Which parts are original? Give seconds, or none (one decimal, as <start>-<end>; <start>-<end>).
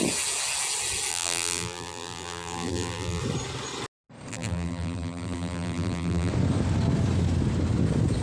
0.0-1.1; 3.2-4.3; 6.3-8.2